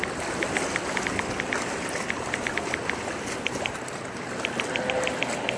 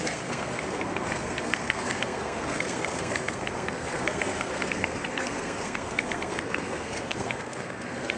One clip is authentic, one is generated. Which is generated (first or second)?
second